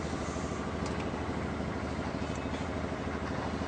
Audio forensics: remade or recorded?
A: recorded